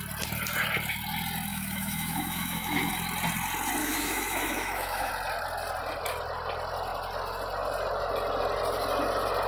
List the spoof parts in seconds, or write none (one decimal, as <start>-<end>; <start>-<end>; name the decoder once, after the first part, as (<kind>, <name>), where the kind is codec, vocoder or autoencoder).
1.5-2.9 (autoencoder, DAC-VAE); 3.8-5.1

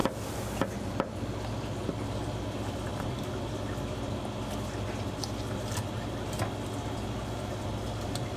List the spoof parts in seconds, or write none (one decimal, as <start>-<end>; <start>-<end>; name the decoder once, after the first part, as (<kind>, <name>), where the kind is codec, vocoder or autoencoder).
none

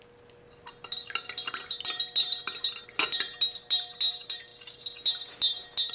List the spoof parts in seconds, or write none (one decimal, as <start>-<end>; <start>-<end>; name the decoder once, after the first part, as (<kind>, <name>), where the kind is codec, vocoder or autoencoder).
none

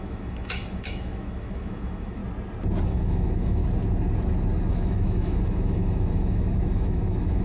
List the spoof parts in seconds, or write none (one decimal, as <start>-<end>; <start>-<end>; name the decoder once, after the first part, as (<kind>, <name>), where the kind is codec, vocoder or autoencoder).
0.0-2.2 (autoencoder, DAC-VAE); 2.8-3.6; 4.7-7.4